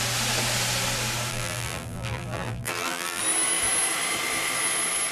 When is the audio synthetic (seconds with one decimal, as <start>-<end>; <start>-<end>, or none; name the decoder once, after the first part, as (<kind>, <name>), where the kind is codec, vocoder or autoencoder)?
1.3-3.2 (vocoder, BigVGAN v2)